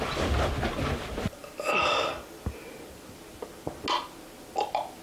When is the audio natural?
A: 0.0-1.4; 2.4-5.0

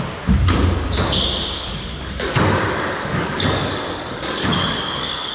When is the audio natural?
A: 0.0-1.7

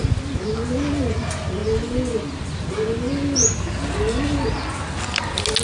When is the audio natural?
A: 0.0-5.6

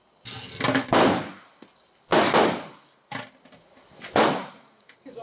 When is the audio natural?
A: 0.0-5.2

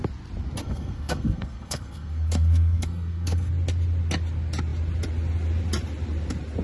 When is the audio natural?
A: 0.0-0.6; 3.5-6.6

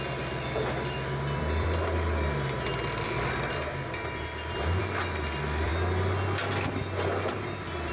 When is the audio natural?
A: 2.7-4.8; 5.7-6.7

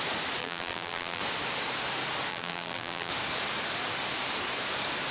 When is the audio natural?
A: 0.0-0.4; 1.2-2.3; 3.1-5.1